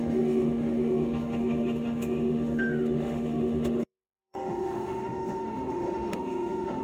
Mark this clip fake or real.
fake